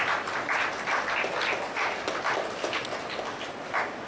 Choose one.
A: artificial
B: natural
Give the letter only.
B